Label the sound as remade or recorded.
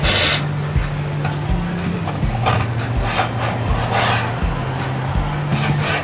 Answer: recorded